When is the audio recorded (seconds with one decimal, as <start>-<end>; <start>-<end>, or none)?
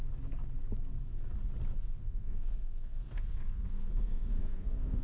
0.0-2.0